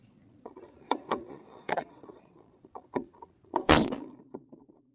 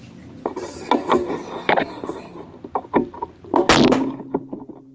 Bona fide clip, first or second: second